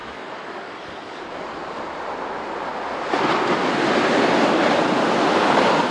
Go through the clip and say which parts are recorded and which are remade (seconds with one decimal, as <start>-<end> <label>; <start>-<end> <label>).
0.0-1.2 remade; 1.2-5.9 recorded